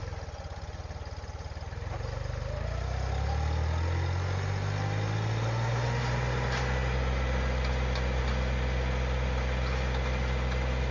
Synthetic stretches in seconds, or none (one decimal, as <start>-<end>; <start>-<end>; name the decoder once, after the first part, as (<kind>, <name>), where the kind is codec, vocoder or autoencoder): none